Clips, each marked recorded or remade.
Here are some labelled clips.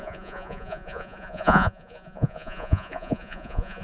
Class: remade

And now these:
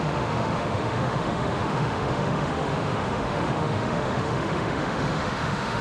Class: remade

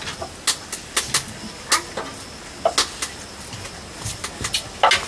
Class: recorded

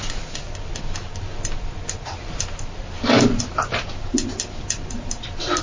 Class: recorded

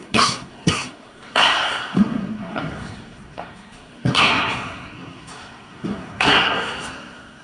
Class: remade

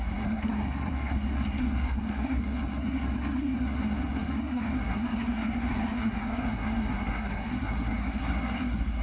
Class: remade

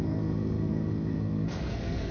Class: remade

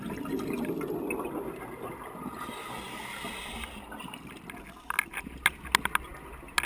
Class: recorded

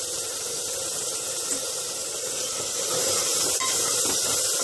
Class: remade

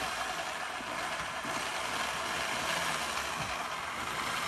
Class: recorded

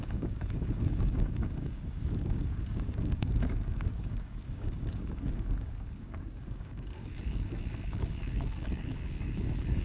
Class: remade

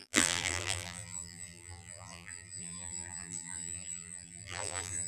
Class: remade